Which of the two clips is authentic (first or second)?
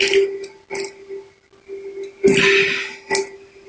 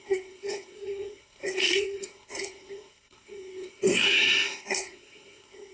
first